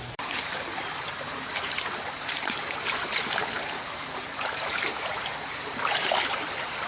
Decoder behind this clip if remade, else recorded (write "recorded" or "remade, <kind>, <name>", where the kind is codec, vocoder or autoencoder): remade, vocoder, BigVGAN v2